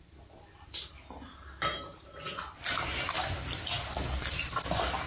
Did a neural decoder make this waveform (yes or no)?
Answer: no